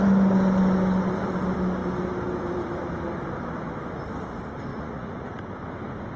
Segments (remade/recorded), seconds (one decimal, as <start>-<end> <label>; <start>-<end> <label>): 0.0-4.7 recorded; 4.7-5.4 remade; 5.4-6.2 recorded

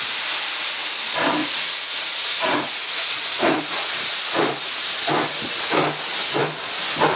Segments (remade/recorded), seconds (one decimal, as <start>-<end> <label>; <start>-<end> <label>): 0.0-1.4 recorded; 1.4-4.8 remade; 4.8-7.2 recorded